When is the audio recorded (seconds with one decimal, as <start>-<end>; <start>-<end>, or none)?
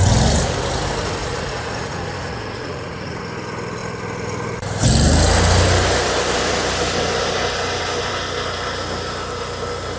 0.0-1.2; 3.2-10.0